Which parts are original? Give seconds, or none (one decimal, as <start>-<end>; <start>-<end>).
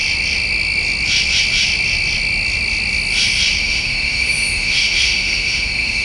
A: 0.0-3.6